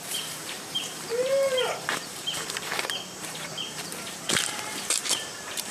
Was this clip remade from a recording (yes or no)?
yes